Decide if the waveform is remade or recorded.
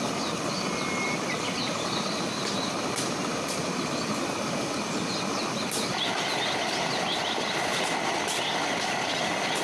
recorded